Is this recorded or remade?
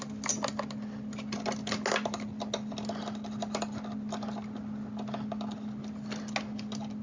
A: recorded